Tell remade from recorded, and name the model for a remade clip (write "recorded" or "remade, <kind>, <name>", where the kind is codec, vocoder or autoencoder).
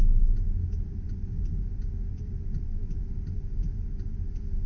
recorded